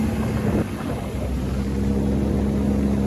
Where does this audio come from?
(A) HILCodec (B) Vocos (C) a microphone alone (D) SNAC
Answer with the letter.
C